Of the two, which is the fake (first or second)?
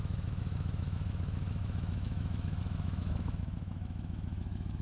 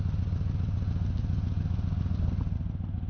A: first